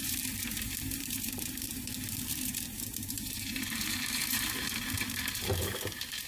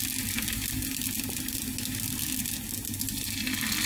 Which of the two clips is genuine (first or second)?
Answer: second